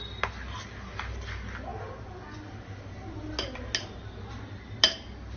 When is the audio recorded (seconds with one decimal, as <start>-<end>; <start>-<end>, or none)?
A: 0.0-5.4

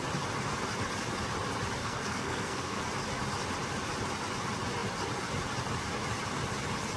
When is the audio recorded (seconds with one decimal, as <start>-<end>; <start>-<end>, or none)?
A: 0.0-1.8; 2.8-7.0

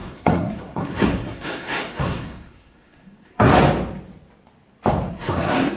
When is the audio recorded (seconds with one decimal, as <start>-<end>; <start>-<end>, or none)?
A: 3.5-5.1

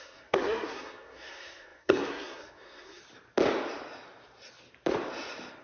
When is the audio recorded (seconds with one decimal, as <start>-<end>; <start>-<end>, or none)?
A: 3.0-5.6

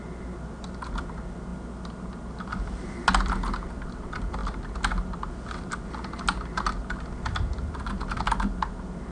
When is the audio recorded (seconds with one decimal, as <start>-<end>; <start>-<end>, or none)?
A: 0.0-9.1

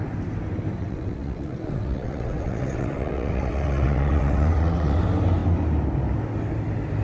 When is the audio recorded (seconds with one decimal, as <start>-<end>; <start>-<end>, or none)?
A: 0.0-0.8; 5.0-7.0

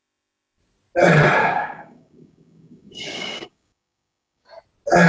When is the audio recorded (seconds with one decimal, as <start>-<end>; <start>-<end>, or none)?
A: 0.0-1.4; 4.5-5.1